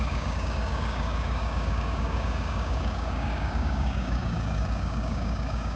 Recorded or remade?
remade